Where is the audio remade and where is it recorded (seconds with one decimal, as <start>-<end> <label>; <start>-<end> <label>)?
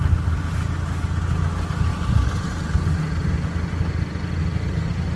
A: 0.0-5.2 recorded